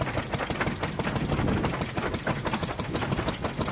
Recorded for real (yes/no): yes